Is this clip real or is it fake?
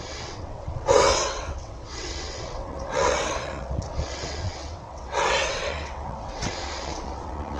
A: fake